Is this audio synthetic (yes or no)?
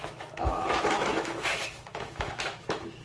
yes